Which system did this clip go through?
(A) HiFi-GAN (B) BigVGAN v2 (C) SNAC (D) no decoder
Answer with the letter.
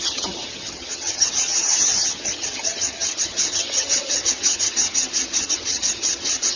A